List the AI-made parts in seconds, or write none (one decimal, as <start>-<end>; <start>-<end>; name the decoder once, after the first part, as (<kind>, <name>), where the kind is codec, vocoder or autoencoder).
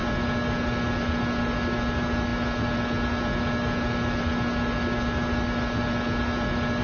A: none